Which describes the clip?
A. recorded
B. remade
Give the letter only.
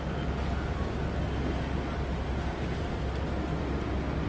A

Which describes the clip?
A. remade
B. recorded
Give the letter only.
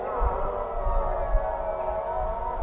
B